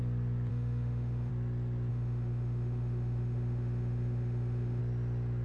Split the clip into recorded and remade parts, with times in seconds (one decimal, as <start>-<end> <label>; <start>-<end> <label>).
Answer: 0.0-0.5 recorded; 0.5-1.3 remade; 1.3-1.9 recorded; 1.9-4.8 remade; 4.8-5.4 recorded